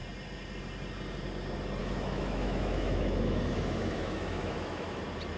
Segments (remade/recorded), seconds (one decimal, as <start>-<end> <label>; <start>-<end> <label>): 0.0-1.8 recorded; 1.8-5.0 remade; 5.0-5.4 recorded